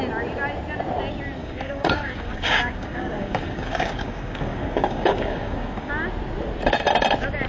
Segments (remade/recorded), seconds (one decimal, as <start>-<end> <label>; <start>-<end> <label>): 0.0-1.4 recorded; 1.4-5.9 remade; 5.9-7.5 recorded